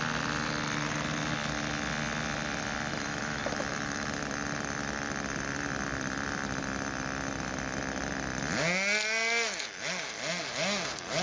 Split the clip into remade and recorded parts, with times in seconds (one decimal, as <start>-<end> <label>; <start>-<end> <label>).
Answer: 0.0-2.9 recorded; 2.9-4.2 remade; 4.2-11.2 recorded

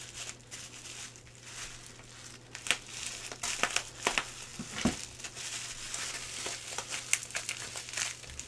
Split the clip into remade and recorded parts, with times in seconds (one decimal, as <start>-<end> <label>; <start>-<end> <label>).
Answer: 0.0-8.5 recorded

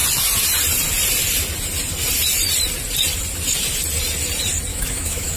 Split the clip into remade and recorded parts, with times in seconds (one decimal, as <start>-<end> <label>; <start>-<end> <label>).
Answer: 0.0-4.7 recorded; 4.7-5.4 remade